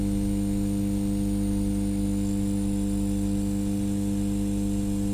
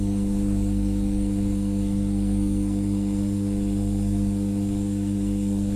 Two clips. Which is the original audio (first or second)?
first